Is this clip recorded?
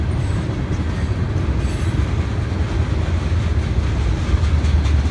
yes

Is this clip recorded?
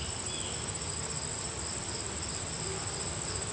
yes